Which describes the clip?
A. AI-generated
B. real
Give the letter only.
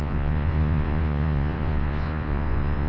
A